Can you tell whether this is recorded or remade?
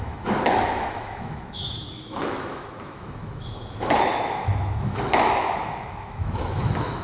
remade